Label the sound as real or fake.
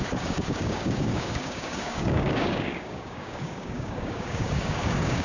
fake